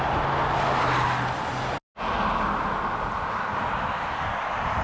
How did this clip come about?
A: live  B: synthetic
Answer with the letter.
A